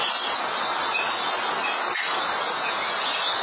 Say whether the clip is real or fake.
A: real